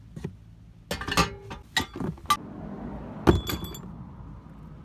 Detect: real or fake real